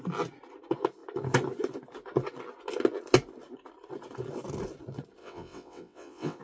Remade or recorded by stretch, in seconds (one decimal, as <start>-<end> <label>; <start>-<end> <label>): 0.0-5.2 recorded; 5.2-6.4 remade

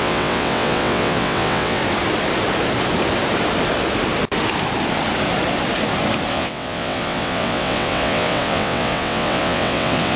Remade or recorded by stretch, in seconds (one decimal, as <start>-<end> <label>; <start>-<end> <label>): 0.0-1.8 remade; 1.8-6.3 recorded; 6.3-10.2 remade

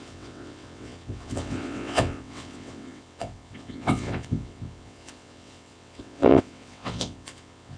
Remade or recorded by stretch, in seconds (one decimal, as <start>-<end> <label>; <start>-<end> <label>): 0.0-7.8 remade

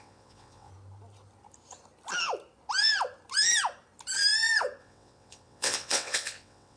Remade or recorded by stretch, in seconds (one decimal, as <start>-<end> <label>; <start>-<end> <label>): 0.0-0.7 remade; 0.7-4.8 recorded; 4.8-6.8 remade

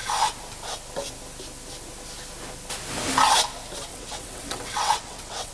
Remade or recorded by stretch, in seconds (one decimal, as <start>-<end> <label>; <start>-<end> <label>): 0.0-3.9 recorded; 3.9-5.5 remade

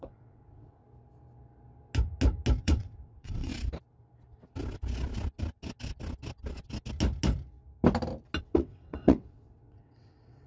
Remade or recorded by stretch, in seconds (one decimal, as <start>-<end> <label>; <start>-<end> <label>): 0.0-0.8 remade; 0.8-2.6 recorded; 2.6-3.5 remade; 3.5-8.4 recorded; 8.4-10.5 remade

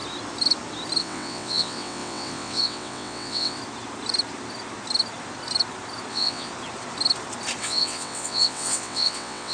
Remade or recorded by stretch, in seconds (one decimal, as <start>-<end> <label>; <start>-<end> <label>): 0.0-1.0 recorded; 1.0-3.6 remade; 3.6-6.1 recorded; 6.1-6.5 remade; 6.5-7.6 recorded; 7.6-9.5 remade